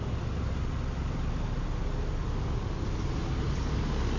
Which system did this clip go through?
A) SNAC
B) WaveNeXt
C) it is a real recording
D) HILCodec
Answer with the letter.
C